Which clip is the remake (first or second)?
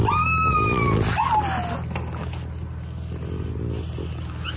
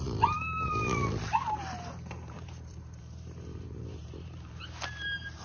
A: second